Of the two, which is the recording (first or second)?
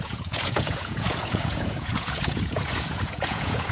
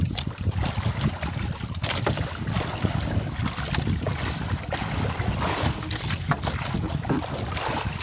second